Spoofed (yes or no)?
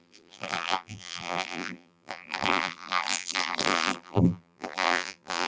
yes